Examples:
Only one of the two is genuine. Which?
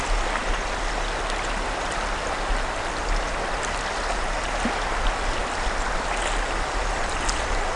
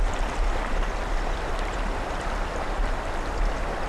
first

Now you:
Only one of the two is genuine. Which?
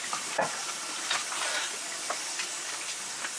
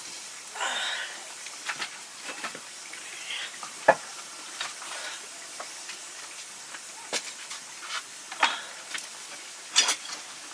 first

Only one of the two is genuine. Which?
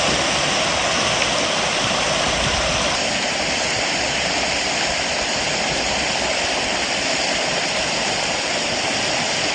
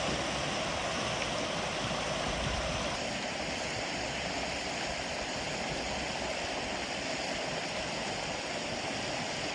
second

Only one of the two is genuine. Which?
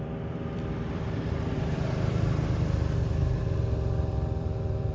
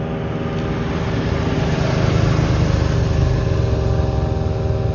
second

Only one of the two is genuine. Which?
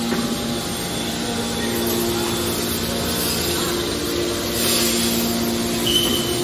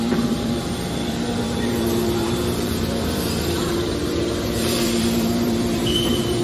first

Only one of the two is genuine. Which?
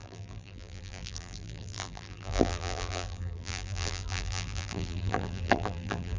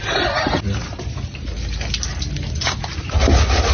second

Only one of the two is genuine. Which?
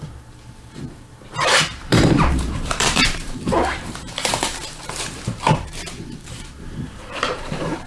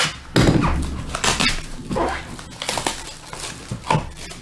second